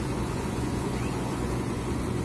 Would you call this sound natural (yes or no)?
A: no